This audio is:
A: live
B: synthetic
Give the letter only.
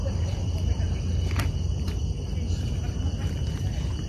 A